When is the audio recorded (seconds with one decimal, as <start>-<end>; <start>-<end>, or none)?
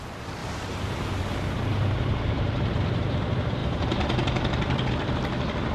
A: 0.0-0.4; 1.1-1.7; 3.0-3.6; 4.9-5.7